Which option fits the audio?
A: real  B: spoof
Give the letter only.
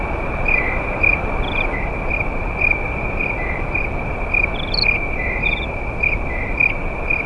A